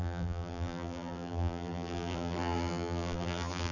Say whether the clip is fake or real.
fake